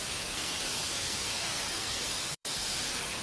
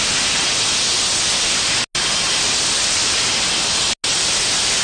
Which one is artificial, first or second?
first